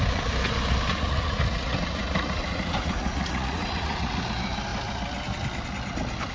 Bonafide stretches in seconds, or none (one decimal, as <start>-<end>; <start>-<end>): 0.0-0.9; 4.2-6.3